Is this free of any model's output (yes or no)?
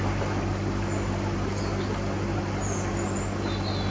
yes